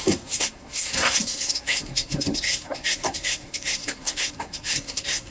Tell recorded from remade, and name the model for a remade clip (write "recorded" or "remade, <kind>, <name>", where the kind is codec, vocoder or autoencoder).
remade, codec, SNAC